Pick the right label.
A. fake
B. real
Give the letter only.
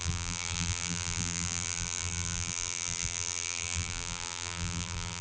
A